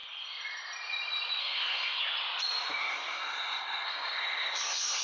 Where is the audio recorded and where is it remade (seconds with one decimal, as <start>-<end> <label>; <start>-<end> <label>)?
0.0-1.4 recorded; 1.4-2.0 remade; 2.0-2.8 recorded; 2.8-5.0 remade